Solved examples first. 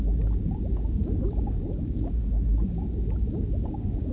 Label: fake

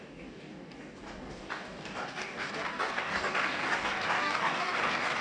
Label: fake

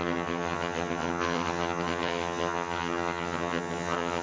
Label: fake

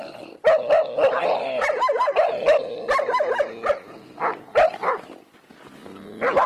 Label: real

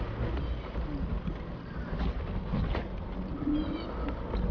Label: real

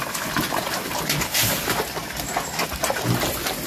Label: real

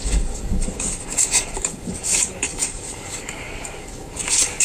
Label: fake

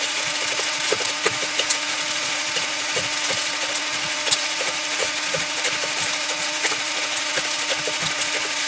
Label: fake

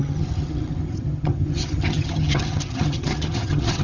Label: fake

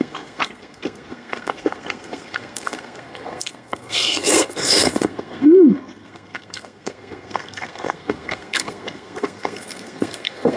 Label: fake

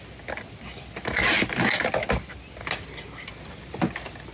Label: real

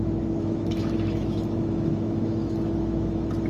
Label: fake